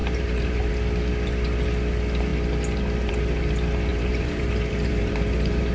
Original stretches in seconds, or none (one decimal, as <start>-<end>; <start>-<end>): 0.7-3.9